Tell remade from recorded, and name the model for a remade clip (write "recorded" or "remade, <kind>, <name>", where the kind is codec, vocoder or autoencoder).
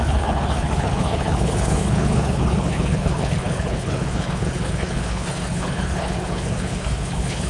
remade, codec, HILCodec